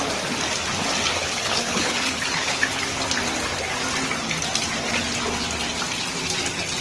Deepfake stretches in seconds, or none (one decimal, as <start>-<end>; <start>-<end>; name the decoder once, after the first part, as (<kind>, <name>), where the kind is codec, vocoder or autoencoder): 1.2-2.8 (codec, HILCodec)